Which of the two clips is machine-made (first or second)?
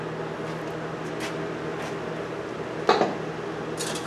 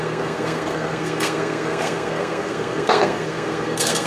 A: second